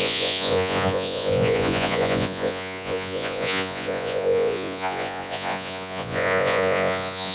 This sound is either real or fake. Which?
fake